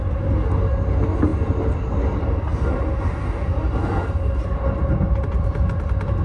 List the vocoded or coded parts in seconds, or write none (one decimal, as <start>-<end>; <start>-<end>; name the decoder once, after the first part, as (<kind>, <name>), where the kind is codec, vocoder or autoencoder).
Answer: none